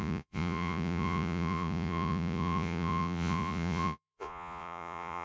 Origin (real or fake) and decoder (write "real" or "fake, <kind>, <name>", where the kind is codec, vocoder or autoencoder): fake, vocoder, Vocos